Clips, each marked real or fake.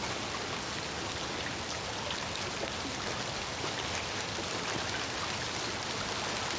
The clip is real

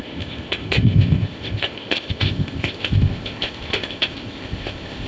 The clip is fake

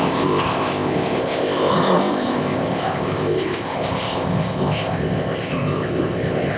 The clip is fake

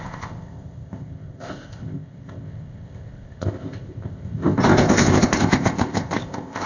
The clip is fake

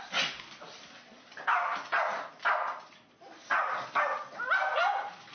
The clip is real